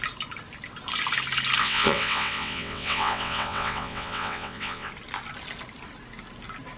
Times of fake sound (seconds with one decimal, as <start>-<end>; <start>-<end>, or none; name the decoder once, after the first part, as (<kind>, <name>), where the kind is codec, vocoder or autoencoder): 1.6-4.9 (vocoder, WaveNeXt)